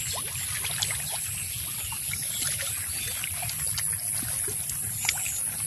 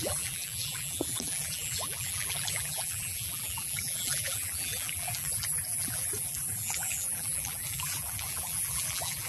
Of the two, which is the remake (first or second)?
second